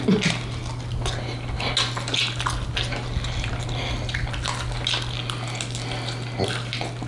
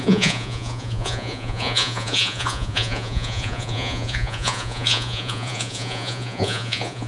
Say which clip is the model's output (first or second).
second